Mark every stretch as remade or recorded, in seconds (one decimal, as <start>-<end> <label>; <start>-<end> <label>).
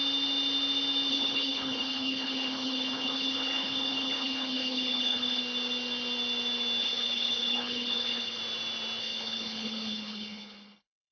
0.0-1.1 recorded; 1.1-5.4 remade; 5.4-6.8 recorded; 6.8-8.4 remade; 8.4-9.0 recorded; 9.0-11.1 remade